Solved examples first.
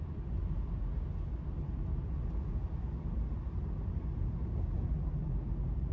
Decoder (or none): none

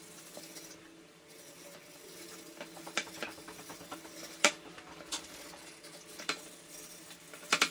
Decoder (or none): vocoder, BigVGAN v2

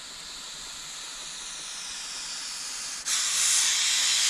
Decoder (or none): none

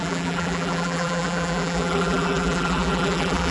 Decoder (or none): vocoder, BigVGAN v2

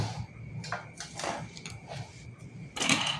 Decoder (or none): none